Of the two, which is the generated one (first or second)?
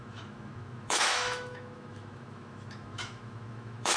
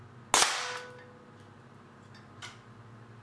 first